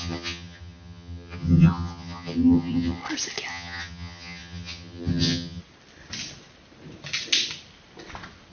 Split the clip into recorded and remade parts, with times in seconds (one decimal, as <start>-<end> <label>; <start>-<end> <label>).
0.0-3.0 remade; 3.0-3.5 recorded; 3.5-5.6 remade; 5.6-8.5 recorded

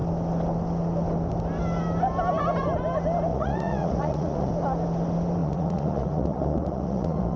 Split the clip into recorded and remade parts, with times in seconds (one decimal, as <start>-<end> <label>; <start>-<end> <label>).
0.0-3.3 recorded; 3.3-4.5 remade; 4.5-5.4 recorded; 5.4-7.4 remade

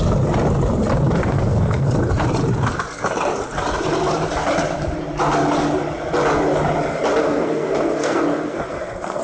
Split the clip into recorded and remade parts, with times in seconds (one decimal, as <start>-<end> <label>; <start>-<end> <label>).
0.0-1.2 recorded; 1.2-1.9 remade; 1.9-7.2 recorded; 7.2-9.2 remade

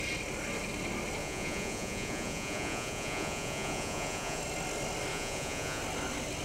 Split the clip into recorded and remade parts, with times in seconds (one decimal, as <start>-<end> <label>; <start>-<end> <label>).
0.0-1.2 recorded; 1.2-4.4 remade; 4.4-5.1 recorded; 5.1-5.8 remade; 5.8-6.4 recorded

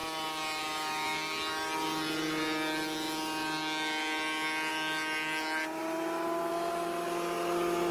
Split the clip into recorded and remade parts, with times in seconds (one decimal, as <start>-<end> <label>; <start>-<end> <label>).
0.0-7.9 recorded

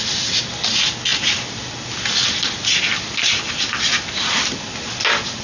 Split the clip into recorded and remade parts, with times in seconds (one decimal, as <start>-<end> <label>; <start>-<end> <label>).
0.0-5.4 recorded